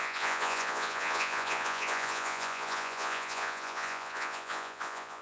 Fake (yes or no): yes